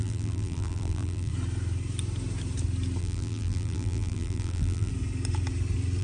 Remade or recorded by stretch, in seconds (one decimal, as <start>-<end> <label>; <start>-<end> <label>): 0.0-1.3 remade; 1.3-3.0 recorded; 3.0-4.9 remade; 4.9-6.0 recorded